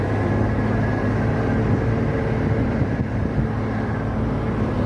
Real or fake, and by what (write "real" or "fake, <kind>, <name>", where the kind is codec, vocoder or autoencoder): fake, vocoder, BigVGAN v2